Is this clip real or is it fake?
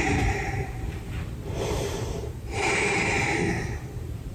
fake